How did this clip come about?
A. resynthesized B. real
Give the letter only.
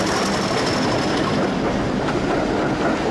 B